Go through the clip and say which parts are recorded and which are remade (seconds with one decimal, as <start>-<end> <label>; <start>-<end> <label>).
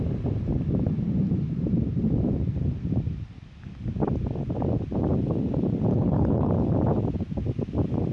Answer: 0.0-5.9 recorded; 5.9-6.5 remade; 6.5-8.1 recorded